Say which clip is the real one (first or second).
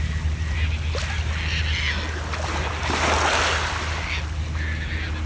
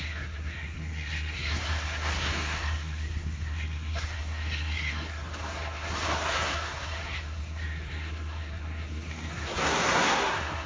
first